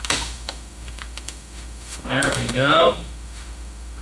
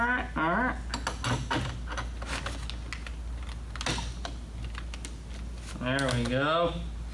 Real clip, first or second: second